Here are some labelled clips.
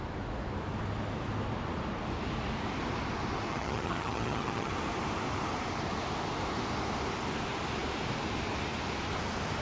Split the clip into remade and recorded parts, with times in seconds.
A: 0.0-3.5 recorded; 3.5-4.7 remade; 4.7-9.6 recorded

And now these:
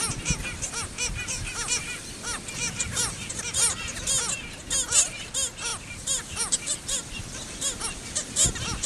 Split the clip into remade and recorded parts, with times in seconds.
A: 0.0-2.6 recorded; 2.6-3.3 remade; 3.3-5.7 recorded; 5.7-7.2 remade; 7.2-8.9 recorded

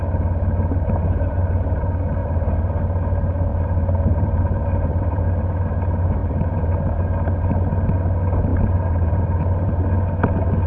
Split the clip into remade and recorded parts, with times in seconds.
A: 0.0-2.2 recorded; 2.2-2.8 remade; 2.8-3.5 recorded; 3.5-5.2 remade; 5.2-6.2 recorded; 6.2-7.0 remade; 7.0-8.5 recorded; 8.5-9.8 remade; 9.8-10.7 recorded

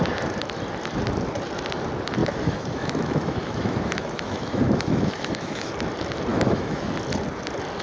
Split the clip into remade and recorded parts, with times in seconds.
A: 0.0-2.2 recorded; 2.2-5.7 remade; 5.7-6.3 recorded; 6.3-6.9 remade; 6.9-7.8 recorded